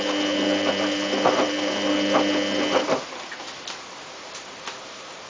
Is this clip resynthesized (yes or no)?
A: no